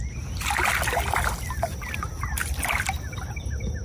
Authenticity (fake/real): real